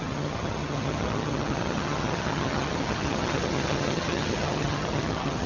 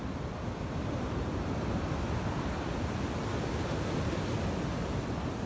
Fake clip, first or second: first